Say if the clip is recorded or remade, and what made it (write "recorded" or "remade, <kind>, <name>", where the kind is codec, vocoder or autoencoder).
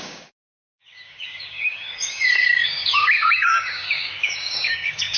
remade, codec, DAC